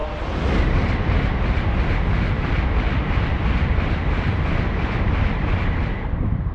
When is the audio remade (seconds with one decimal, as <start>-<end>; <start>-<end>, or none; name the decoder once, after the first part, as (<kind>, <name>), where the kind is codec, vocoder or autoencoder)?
none